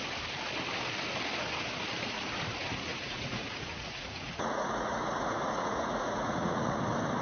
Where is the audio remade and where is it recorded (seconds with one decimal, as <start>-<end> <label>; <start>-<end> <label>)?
0.0-2.9 recorded; 2.9-6.8 remade; 6.8-7.2 recorded